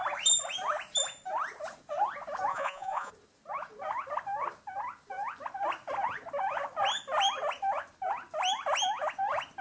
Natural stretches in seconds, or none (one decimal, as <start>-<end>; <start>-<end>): 0.0-2.5; 3.1-9.6